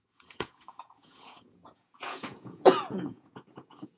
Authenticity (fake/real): fake